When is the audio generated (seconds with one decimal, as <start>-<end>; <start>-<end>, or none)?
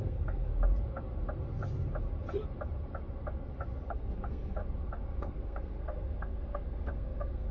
0.0-0.5; 3.9-4.6; 5.2-7.5